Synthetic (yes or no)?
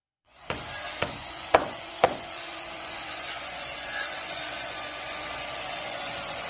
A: yes